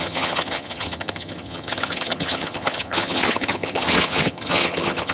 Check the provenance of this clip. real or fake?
fake